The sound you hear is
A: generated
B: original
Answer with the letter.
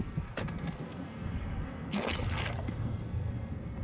A